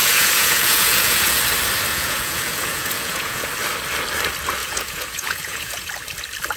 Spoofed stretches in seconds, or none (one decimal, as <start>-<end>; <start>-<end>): 0.0-1.4; 1.9-3.5; 4.6-5.9